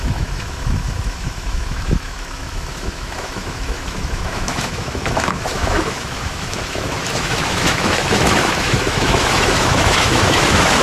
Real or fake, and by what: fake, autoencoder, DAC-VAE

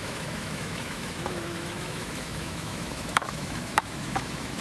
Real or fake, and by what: fake, autoencoder, DAC-VAE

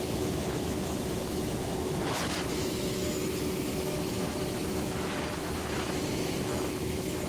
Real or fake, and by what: fake, autoencoder, DAC-VAE